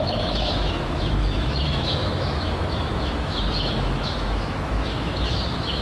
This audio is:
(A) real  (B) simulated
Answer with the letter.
B